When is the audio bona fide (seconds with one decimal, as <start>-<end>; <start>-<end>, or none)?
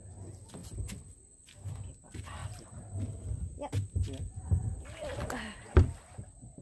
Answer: 0.0-6.6